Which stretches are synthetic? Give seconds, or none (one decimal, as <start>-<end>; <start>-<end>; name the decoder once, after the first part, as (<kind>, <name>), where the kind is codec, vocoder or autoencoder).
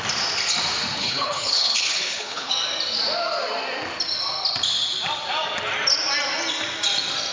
1.0-2.5 (codec, HILCodec)